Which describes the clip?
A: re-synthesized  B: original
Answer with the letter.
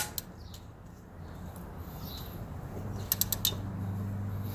B